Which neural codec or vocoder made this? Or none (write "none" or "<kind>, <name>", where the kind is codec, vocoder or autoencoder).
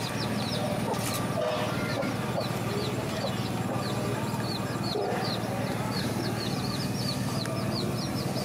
none